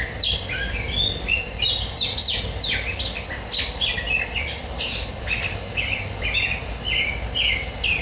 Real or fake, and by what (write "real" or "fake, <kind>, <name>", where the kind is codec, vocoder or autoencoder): real